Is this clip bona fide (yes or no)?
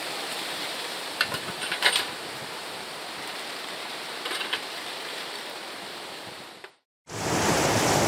no